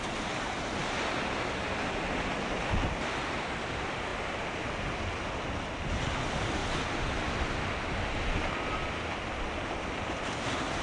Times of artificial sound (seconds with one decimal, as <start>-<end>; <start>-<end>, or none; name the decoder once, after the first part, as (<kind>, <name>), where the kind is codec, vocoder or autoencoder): none